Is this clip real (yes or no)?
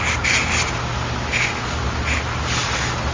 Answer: yes